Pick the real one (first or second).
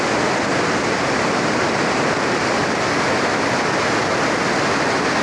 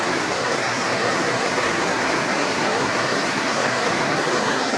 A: first